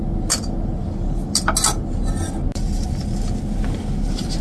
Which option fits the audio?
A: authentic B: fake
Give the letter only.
A